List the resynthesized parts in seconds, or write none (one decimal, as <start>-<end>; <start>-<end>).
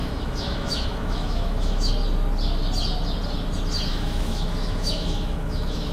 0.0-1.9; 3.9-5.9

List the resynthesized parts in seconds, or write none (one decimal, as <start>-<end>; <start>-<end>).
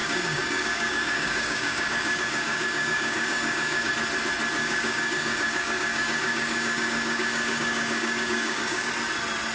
0.0-3.9; 4.6-8.9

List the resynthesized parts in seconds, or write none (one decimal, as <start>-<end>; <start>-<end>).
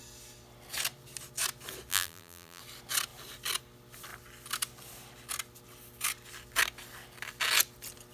1.9-2.6